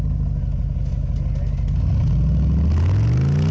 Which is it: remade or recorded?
recorded